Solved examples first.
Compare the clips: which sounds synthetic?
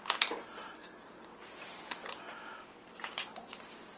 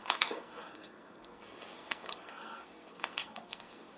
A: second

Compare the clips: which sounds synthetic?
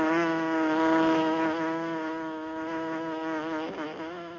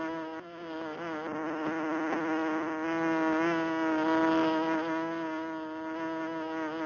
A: first